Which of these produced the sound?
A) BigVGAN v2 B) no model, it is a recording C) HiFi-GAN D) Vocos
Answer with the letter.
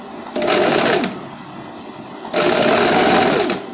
B